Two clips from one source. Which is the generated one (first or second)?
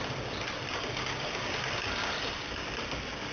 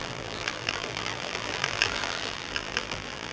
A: second